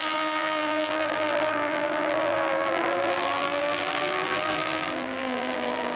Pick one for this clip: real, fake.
fake